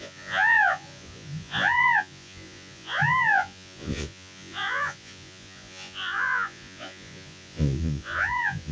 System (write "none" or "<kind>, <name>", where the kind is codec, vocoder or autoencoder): vocoder, Vocos